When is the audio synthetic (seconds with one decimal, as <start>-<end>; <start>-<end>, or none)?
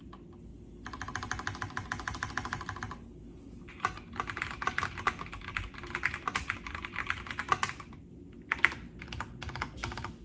none